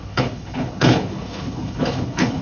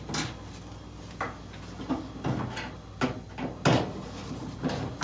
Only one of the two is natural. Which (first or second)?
second